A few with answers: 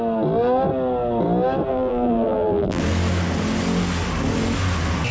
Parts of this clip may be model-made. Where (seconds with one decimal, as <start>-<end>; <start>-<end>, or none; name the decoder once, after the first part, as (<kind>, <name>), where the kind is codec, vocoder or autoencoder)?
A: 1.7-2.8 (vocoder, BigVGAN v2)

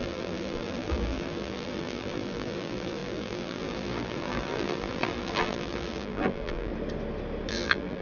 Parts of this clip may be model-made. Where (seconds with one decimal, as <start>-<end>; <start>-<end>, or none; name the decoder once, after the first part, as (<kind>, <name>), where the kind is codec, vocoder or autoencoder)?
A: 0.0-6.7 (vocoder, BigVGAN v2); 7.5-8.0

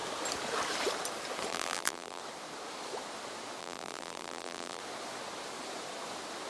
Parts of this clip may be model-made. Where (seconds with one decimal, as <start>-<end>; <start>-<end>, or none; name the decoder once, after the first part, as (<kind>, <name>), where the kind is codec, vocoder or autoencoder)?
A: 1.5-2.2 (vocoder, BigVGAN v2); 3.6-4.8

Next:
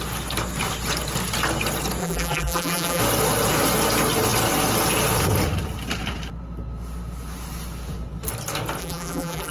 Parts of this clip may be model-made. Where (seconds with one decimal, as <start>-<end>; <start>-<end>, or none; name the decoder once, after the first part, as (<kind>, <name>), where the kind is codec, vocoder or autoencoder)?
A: 2.0-3.0 (vocoder, BigVGAN v2); 8.8-9.5